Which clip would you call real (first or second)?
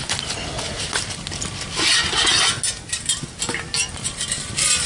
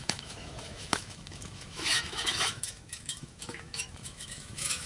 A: first